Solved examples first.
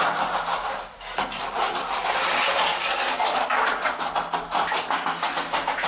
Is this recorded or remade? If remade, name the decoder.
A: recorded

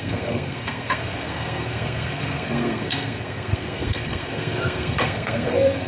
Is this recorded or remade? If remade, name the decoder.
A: remade, codec, SNAC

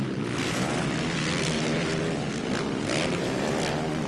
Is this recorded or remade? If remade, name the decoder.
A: recorded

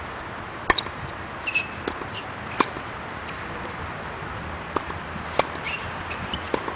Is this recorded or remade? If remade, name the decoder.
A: recorded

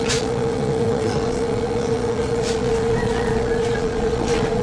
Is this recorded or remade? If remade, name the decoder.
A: remade, vocoder, Vocos